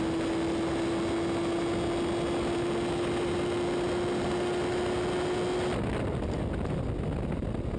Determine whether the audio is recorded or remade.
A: recorded